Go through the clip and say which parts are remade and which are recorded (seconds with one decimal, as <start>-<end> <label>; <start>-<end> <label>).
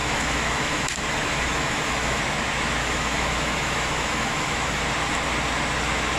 0.0-2.2 remade; 2.2-2.8 recorded; 2.8-4.8 remade; 4.8-6.2 recorded